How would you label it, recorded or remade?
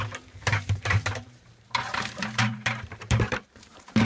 remade